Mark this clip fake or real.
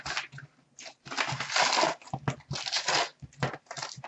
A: real